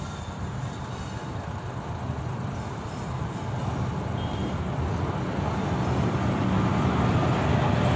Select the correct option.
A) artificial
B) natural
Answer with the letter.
B